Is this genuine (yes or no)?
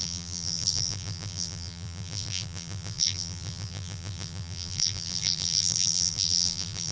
no